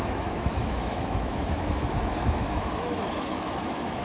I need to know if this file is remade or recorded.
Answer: remade